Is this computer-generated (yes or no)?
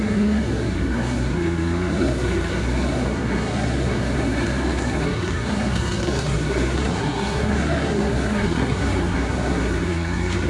yes